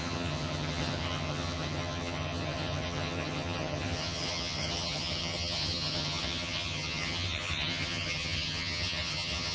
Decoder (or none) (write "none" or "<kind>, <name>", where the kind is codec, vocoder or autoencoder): vocoder, HiFi-GAN